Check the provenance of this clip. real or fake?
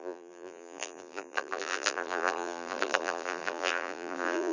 fake